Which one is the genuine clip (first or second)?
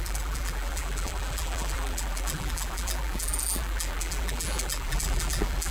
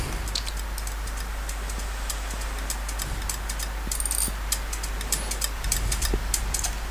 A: second